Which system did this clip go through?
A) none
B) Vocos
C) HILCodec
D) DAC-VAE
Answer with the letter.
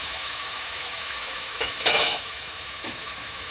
D